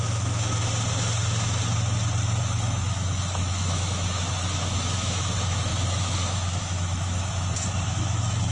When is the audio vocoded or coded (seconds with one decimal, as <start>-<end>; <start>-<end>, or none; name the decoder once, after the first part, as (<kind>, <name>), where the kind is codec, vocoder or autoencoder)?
0.0-0.6 (autoencoder, DAC-VAE); 2.4-8.5